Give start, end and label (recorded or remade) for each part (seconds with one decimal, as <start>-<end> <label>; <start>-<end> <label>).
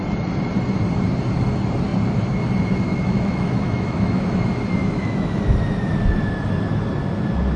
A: 0.0-2.9 recorded; 2.9-4.2 remade; 4.2-4.8 recorded; 4.8-5.4 remade; 5.4-7.6 recorded